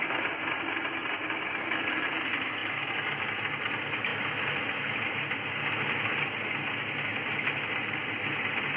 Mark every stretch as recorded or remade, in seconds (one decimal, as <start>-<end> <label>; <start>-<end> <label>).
0.0-8.8 recorded